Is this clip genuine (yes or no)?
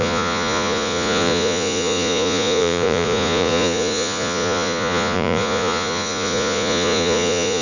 no